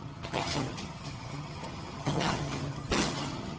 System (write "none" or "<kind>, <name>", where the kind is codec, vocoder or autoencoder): vocoder, HiFi-GAN